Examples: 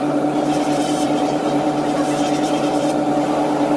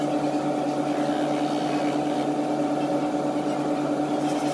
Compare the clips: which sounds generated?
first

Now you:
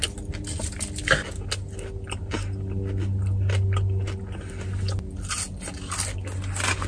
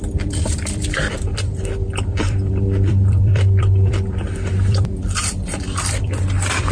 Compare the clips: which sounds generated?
second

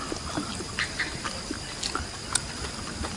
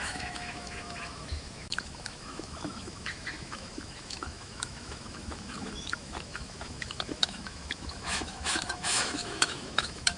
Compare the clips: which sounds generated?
second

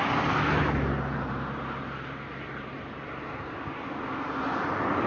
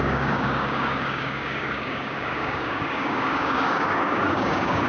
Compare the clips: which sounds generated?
second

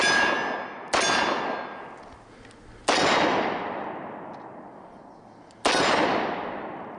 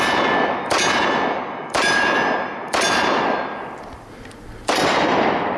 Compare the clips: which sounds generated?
second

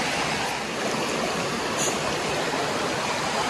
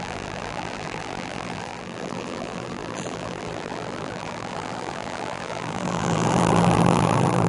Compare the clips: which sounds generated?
second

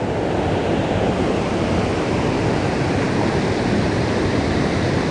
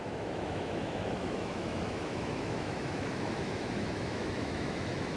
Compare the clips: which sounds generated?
second